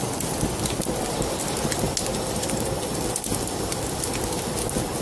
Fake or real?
real